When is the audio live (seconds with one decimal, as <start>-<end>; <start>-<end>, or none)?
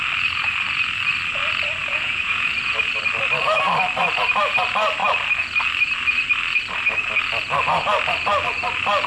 0.0-1.8; 2.5-9.1